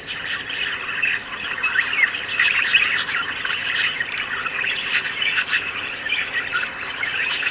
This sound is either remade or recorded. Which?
remade